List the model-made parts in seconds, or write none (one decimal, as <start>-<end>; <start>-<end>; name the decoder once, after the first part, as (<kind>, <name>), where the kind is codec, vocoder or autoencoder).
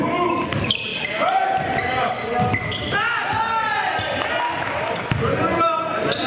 none